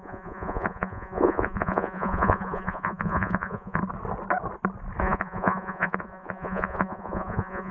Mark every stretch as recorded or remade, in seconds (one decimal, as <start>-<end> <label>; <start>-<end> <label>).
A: 0.0-3.8 remade; 3.8-5.0 recorded; 5.0-7.7 remade